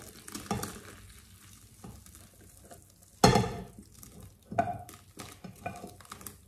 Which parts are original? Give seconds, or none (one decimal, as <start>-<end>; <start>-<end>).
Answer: 0.0-6.5